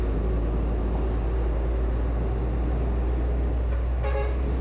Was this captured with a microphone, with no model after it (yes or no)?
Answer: yes